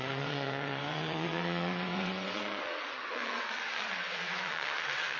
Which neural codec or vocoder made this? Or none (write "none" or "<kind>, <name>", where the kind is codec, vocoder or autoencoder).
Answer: vocoder, WaveNeXt